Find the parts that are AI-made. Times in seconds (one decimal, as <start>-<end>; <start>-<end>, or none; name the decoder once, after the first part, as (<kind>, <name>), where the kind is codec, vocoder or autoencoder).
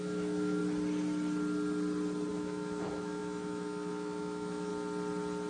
0.0-0.6 (autoencoder, DAC-VAE); 2.3-4.7